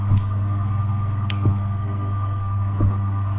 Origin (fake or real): fake